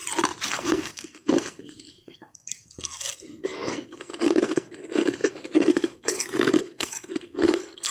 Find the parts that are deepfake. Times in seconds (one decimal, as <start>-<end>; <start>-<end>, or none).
0.5-7.9